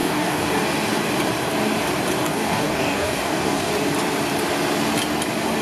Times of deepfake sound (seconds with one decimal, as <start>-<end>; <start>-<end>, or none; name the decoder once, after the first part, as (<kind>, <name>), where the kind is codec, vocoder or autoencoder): 0.0-0.5 (codec, DAC); 2.3-3.7

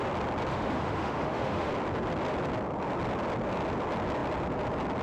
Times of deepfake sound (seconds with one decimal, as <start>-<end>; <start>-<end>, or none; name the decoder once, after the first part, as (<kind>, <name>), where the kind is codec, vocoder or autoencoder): 0.5-1.7 (autoencoder, DAC-VAE)

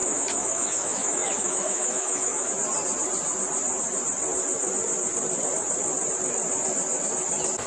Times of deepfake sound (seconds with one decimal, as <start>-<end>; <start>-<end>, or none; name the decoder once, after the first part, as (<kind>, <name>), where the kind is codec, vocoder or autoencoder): 0.0-2.5 (autoencoder, DAC-VAE)

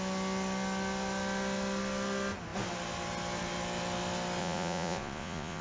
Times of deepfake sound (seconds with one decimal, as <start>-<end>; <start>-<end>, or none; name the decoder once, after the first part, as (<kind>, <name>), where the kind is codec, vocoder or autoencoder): 4.4-5.6 (vocoder, Vocos)

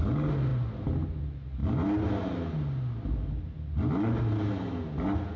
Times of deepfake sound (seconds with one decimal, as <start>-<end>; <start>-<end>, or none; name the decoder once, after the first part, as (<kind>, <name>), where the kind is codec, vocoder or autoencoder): none

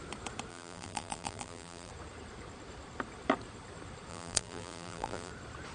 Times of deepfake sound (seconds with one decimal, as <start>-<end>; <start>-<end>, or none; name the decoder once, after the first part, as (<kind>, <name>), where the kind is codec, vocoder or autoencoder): 0.5-1.9 (vocoder, BigVGAN v2); 4.1-5.3

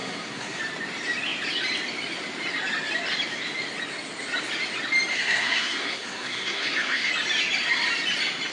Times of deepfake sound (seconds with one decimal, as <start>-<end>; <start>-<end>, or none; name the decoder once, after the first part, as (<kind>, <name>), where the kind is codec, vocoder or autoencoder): 0.0-0.6 (codec, SNAC); 5.1-7.1